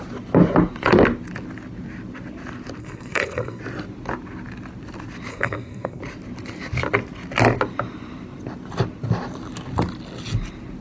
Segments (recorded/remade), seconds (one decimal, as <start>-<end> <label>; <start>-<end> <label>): 0.0-2.8 recorded; 2.8-3.6 remade; 3.6-5.3 recorded; 5.3-6.0 remade; 6.0-10.8 recorded

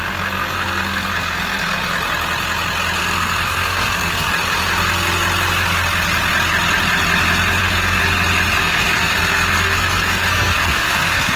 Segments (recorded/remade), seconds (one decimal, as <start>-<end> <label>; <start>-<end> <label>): 0.0-1.8 remade; 1.8-3.0 recorded; 3.0-4.3 remade; 4.3-7.6 recorded; 7.6-8.0 remade; 8.0-8.6 recorded; 8.6-11.4 remade

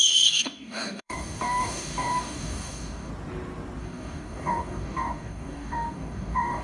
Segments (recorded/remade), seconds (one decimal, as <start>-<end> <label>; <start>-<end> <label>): 0.0-3.1 remade; 3.1-3.8 recorded; 3.8-6.6 remade

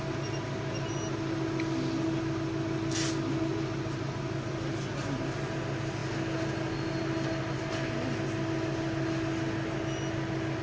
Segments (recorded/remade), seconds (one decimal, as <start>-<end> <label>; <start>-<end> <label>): 0.0-10.6 recorded